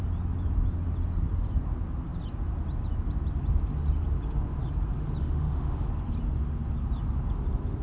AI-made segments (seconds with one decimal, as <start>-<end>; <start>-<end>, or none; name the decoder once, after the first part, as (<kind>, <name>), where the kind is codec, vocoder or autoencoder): 5.2-5.9 (autoencoder, DAC-VAE)